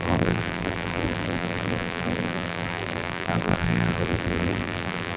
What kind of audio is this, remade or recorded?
remade